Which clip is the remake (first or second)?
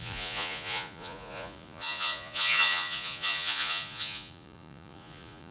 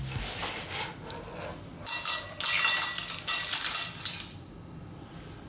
first